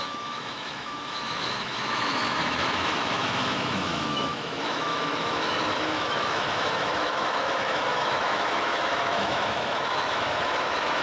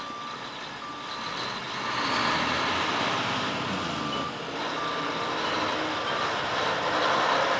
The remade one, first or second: first